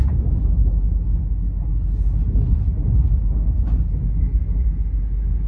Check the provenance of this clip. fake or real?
real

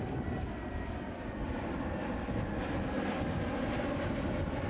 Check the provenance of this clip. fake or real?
real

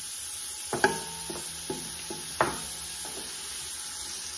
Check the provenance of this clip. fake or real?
real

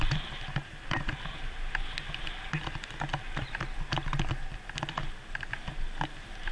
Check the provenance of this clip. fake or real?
real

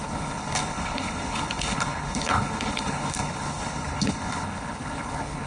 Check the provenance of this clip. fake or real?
fake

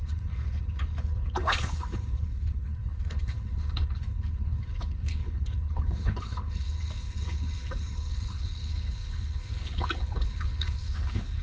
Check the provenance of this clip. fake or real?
fake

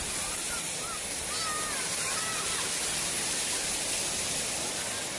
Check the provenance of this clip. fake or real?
real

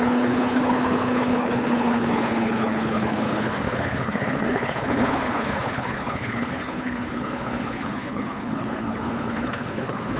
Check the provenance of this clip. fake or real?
fake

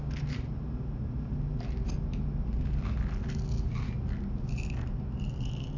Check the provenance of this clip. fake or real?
real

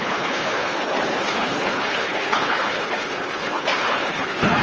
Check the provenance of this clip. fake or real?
fake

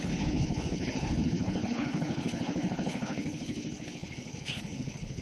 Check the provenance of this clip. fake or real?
fake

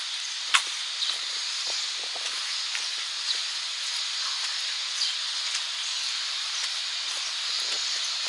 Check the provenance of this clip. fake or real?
real